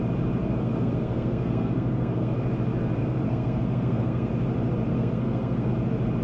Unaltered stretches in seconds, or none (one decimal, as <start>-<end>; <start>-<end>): 0.0-0.4; 2.3-3.0; 4.3-4.9; 5.7-6.2

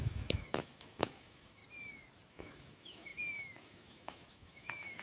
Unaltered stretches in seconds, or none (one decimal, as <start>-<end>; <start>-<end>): 1.6-2.3

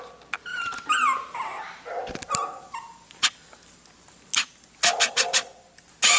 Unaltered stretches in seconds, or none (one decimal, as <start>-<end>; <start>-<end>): 0.0-0.5; 2.0-6.2